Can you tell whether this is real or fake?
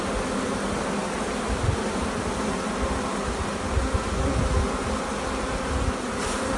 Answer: real